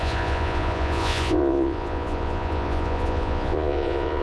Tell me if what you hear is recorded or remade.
remade